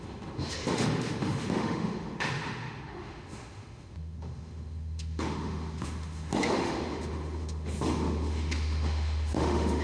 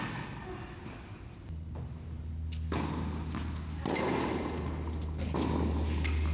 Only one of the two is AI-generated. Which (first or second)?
first